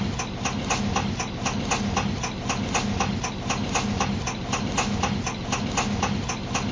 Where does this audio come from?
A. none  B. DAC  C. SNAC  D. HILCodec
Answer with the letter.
A